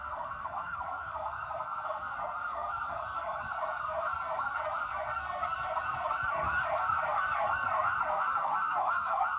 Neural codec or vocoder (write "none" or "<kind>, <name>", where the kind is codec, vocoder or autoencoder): codec, SNAC